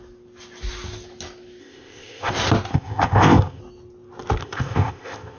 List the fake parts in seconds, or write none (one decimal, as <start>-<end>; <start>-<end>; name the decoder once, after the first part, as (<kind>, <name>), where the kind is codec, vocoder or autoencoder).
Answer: 1.6-2.3 (codec, ZipCodec); 2.7-3.6; 4.4-5.4